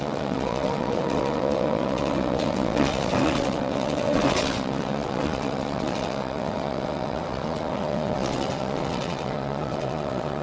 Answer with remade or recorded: remade